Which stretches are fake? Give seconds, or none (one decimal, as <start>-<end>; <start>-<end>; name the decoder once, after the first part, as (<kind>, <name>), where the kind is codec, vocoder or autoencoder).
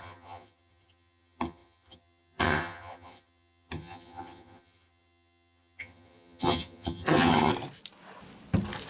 0.0-7.5 (vocoder, HiFi-GAN)